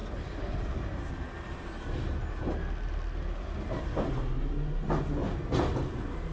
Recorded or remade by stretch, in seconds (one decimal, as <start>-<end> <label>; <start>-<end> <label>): 0.0-6.3 recorded